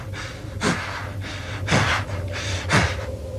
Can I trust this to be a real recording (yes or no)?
yes